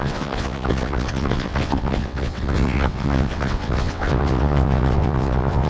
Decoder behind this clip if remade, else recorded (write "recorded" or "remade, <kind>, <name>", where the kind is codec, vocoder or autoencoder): remade, vocoder, WaveNeXt